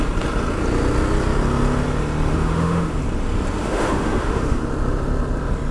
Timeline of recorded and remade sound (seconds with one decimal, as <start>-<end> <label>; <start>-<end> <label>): 0.0-2.3 recorded; 2.3-3.0 remade; 3.0-3.6 recorded; 3.6-4.6 remade; 4.6-5.7 recorded